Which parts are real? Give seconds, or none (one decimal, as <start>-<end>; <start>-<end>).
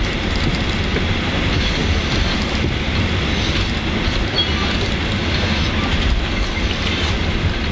0.0-7.7